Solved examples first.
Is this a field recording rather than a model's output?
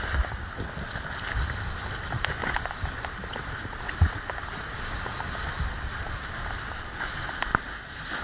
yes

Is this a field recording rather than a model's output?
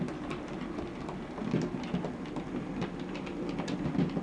yes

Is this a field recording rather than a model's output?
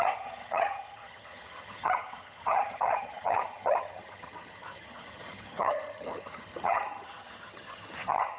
no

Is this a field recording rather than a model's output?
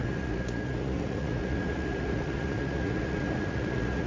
no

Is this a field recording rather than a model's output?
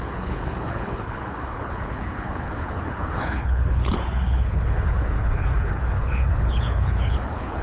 no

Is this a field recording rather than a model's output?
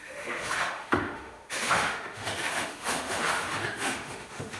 no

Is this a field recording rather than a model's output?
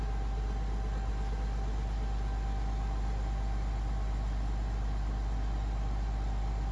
yes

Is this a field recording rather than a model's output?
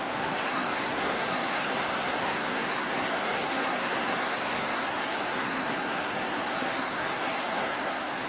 no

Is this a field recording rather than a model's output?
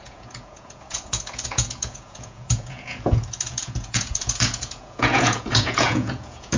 no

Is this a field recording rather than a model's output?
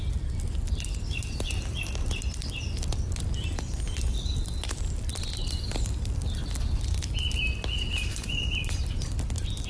yes